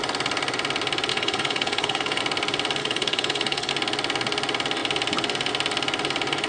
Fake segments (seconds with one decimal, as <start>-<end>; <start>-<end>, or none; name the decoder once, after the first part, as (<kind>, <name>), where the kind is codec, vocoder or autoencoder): 1.1-2.2 (codec, HILCodec); 2.8-3.7

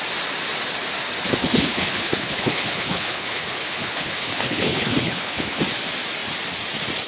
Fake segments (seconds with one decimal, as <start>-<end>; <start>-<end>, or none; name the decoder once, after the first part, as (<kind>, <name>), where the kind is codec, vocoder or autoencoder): 1.4-5.6 (codec, HILCodec)

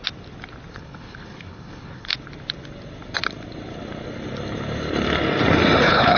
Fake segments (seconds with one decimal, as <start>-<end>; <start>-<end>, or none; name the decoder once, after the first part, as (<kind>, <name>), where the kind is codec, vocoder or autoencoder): 0.7-2.1 (codec, HILCodec); 5.8-6.2

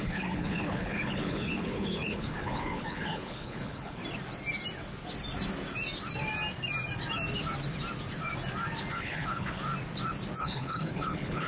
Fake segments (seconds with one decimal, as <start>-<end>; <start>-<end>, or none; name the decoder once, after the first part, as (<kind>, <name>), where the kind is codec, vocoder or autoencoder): 0.0-4.0 (codec, HILCodec); 8.9-9.6; 10.4-11.5

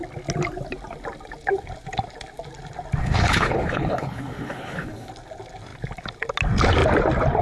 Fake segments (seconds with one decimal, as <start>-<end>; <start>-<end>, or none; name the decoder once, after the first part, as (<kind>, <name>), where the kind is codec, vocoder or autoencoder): 3.0-5.1 (codec, HILCodec)

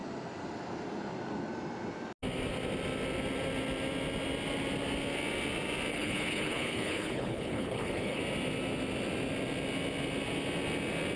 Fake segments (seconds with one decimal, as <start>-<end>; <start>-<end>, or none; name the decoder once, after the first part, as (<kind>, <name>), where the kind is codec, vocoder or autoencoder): 5.9-8.2 (codec, HILCodec)

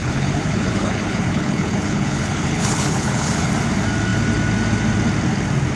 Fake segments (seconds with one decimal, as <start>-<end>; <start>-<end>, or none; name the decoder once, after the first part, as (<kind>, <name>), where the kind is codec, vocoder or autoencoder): 0.0-3.5 (codec, HILCodec)